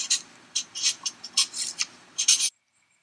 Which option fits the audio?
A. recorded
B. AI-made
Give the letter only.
B